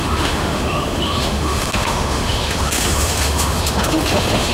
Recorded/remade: remade